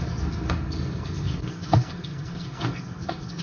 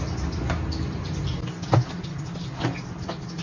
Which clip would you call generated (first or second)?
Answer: first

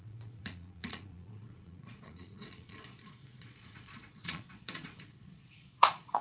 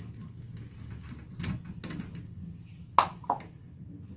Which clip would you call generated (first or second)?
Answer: first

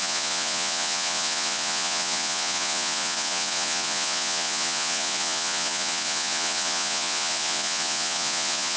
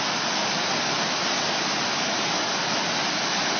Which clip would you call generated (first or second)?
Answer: first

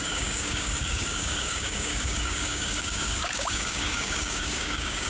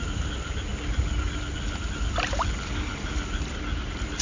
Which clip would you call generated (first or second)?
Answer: first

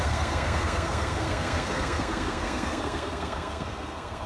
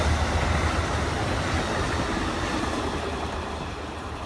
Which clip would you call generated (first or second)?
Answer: first